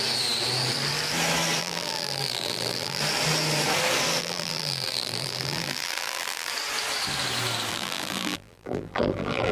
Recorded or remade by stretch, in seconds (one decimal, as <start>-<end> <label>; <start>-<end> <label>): 0.0-1.6 recorded; 1.6-3.0 remade; 3.0-4.2 recorded; 4.2-6.5 remade; 6.5-7.7 recorded; 7.7-9.5 remade